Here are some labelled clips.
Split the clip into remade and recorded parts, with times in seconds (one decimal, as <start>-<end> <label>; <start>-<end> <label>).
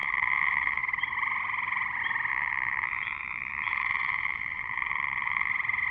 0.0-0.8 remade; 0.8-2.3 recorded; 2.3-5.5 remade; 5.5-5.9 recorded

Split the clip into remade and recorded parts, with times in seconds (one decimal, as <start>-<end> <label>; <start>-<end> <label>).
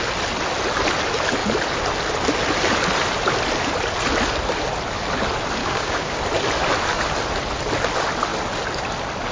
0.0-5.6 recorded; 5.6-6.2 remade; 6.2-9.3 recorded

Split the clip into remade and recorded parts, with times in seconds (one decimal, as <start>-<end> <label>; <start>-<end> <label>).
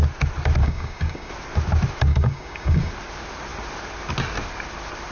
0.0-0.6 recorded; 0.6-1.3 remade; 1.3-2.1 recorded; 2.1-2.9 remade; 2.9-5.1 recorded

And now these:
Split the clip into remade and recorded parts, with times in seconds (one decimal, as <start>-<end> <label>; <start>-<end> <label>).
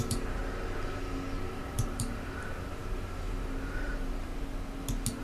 0.0-0.4 remade; 0.4-1.4 recorded; 1.4-4.3 remade; 4.3-5.2 recorded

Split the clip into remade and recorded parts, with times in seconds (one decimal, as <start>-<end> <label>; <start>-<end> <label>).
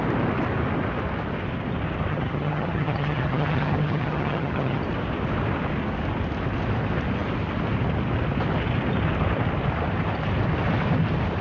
0.0-2.1 recorded; 2.1-4.8 remade; 4.8-11.4 recorded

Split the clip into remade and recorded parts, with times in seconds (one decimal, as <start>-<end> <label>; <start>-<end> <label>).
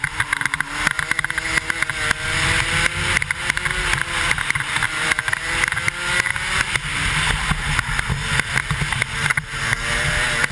0.0-10.5 recorded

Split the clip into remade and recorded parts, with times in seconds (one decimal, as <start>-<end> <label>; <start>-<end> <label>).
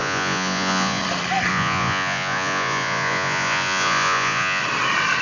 0.0-1.0 remade; 1.0-1.5 recorded; 1.5-4.6 remade; 4.6-5.2 recorded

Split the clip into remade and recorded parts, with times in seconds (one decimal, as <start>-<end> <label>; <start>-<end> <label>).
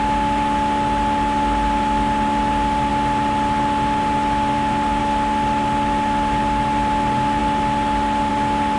0.0-8.8 recorded